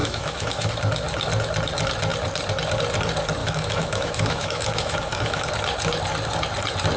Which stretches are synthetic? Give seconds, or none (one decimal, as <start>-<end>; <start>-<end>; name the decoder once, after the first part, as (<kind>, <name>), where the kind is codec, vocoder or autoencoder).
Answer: 0.0-0.7 (autoencoder, DAC-VAE); 3.4-5.5